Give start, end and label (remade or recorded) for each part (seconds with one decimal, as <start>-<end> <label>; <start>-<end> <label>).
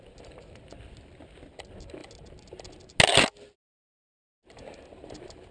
0.0-5.5 recorded